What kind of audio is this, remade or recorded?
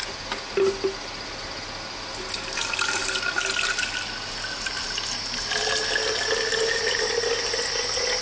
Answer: recorded